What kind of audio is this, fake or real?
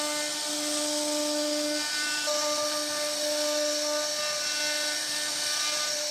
real